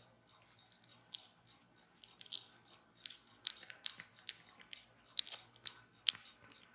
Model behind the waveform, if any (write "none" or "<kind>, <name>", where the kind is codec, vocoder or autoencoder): none